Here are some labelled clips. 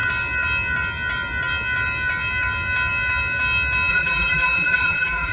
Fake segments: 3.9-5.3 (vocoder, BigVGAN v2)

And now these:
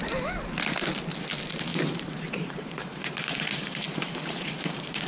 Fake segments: 1.7-5.1 (vocoder, BigVGAN v2)

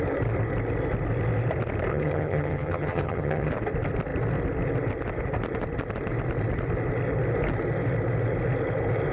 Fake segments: 1.9-3.5 (vocoder, HiFi-GAN)

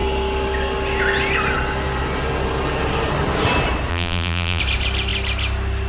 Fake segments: 3.9-4.6 (vocoder, BigVGAN v2)